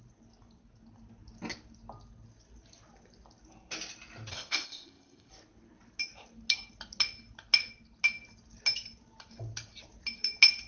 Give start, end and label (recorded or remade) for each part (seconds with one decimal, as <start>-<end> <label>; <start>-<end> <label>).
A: 0.0-4.3 recorded; 4.3-5.3 remade; 5.3-10.7 recorded

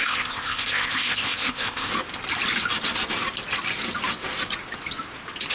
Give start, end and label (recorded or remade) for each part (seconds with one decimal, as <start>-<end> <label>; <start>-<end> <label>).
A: 0.0-1.9 remade; 1.9-5.5 recorded

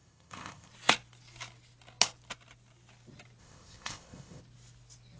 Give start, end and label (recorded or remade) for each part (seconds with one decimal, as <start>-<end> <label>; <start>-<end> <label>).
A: 0.0-0.7 remade; 0.7-3.4 recorded; 3.4-4.4 remade; 4.4-5.2 recorded

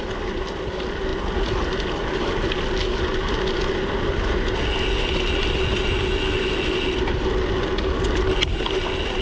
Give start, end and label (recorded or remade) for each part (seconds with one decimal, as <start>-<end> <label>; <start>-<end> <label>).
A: 0.0-9.2 recorded

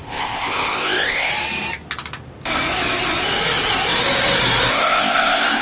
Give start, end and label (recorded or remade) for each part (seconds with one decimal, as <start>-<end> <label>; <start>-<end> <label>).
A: 0.0-1.3 remade; 1.3-4.7 recorded; 4.7-5.6 remade

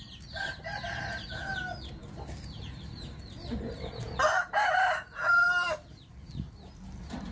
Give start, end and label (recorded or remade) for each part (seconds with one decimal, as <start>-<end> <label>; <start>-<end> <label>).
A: 0.0-7.3 recorded